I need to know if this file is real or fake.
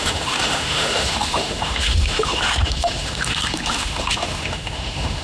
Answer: fake